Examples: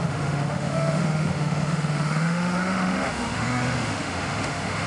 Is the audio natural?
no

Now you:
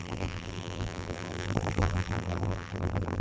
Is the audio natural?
no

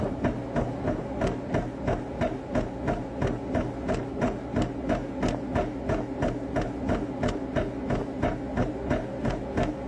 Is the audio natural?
yes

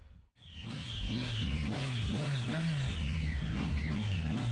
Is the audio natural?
no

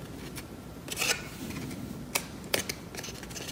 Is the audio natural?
yes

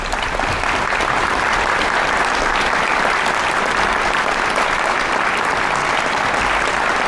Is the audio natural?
yes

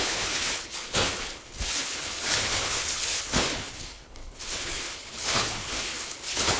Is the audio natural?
no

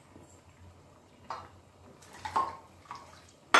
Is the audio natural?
yes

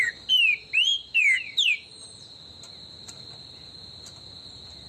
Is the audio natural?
yes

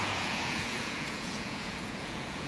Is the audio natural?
no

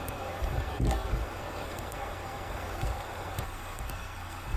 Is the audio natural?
no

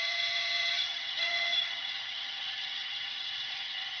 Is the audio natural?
no